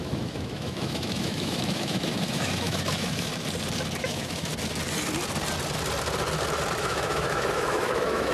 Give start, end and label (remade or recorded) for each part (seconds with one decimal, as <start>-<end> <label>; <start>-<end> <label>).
0.0-3.3 remade; 3.3-4.0 recorded; 4.0-4.5 remade; 4.5-6.8 recorded; 6.8-8.3 remade